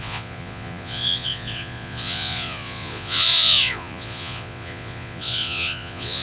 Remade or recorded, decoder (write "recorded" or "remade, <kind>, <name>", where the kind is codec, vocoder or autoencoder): remade, vocoder, Vocos